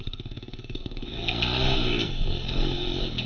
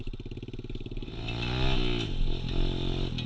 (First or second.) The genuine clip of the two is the second